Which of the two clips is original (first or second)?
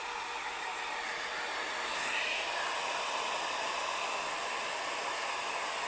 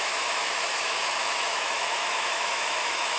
first